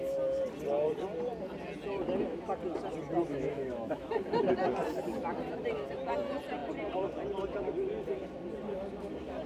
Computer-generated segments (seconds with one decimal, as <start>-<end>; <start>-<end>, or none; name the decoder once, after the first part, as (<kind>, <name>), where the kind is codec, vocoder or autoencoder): 3.3-4.1 (autoencoder, DAC-VAE)